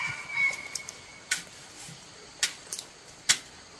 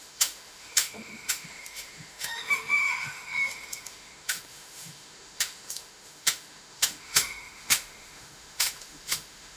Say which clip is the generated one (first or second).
second